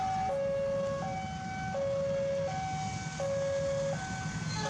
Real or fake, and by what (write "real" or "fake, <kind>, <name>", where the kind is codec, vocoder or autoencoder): real